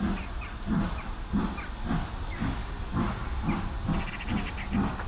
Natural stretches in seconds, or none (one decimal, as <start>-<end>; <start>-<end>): 0.0-5.1